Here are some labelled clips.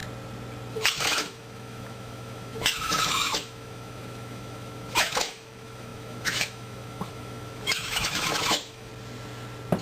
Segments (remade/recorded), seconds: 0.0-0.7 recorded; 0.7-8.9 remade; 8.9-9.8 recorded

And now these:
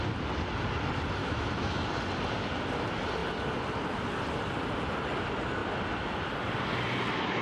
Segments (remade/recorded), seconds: 0.0-1.2 recorded; 1.2-1.9 remade; 1.9-7.4 recorded

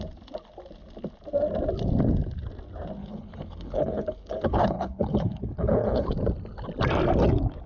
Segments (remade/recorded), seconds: 0.0-3.0 recorded; 3.0-6.1 remade; 6.1-7.7 recorded

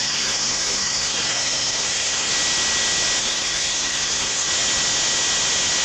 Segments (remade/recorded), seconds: 0.0-2.3 remade; 2.3-3.2 recorded; 3.2-4.5 remade; 4.5-5.8 recorded

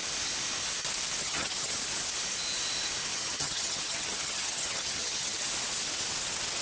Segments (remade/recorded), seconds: 0.0-1.2 recorded; 1.2-1.8 remade; 1.8-3.1 recorded; 3.1-5.5 remade; 5.5-6.6 recorded